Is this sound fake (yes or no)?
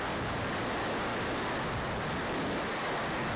no